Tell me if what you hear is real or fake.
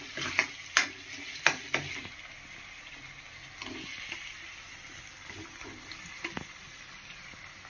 real